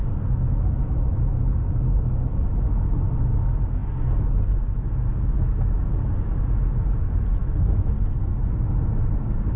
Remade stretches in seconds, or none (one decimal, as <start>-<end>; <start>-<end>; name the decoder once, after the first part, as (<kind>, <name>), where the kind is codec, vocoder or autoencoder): 7.4-7.9 (autoencoder, DAC-VAE)